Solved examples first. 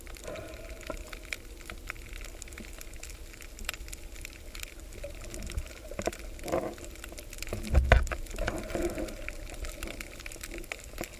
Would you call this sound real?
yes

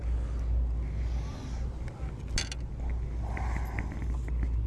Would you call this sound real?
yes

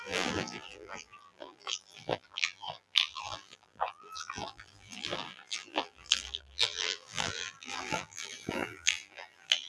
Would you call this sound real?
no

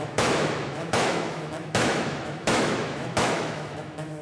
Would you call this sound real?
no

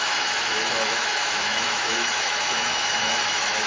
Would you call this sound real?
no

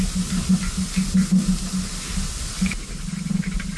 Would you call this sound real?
yes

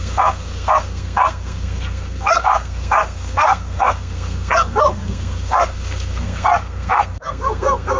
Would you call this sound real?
no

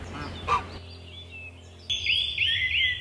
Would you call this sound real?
yes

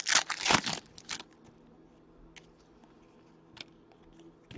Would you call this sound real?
yes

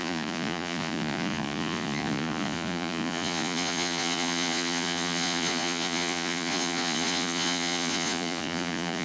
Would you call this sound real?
no